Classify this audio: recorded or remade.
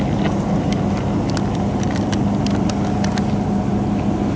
recorded